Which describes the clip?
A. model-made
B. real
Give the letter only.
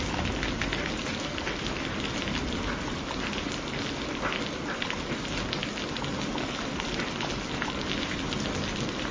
B